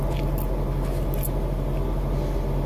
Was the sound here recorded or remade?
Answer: recorded